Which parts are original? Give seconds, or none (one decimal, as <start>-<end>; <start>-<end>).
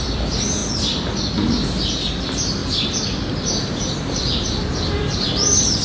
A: 0.6-2.2; 2.6-4.9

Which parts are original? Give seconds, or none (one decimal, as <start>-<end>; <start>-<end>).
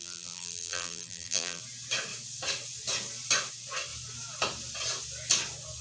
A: 1.6-5.8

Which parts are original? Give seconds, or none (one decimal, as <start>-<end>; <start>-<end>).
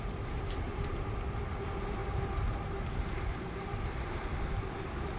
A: none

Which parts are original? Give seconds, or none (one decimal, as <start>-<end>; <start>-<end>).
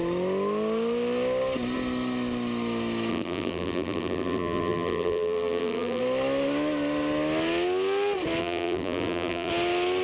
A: 0.0-3.1; 6.0-8.4; 9.5-10.0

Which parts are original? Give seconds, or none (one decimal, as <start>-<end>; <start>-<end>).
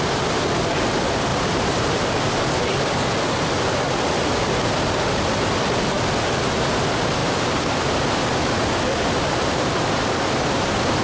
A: 0.0-1.3; 2.0-7.2; 8.0-9.4; 10.0-11.0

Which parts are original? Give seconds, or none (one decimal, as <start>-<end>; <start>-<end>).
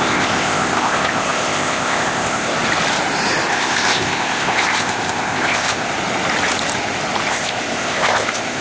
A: 2.5-3.5; 5.9-7.3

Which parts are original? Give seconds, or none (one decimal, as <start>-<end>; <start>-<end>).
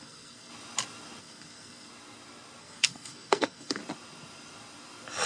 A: 0.5-1.2; 1.9-2.6; 3.8-5.3